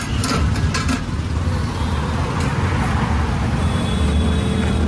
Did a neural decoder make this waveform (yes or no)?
no